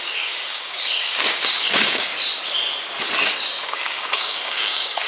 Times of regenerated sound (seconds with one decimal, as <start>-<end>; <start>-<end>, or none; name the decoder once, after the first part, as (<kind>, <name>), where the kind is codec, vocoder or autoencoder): 0.0-2.1 (codec, DAC); 3.6-5.1

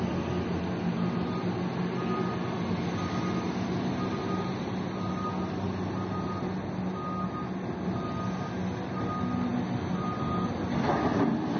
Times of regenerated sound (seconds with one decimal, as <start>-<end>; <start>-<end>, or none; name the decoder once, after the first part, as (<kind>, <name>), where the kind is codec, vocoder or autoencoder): none

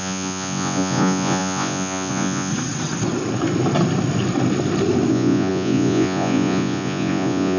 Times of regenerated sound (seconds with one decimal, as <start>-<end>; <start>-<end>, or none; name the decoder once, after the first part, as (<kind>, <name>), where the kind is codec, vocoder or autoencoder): 0.0-2.5 (vocoder, Vocos); 5.1-7.6

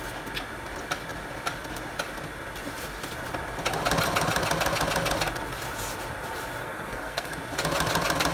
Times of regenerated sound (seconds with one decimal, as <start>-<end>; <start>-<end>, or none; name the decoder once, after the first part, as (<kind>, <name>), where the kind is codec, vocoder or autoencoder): 6.6-7.3 (codec, SNAC)

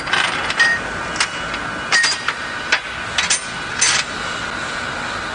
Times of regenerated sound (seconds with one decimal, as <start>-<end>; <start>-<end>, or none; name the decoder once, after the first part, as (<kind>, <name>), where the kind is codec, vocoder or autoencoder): none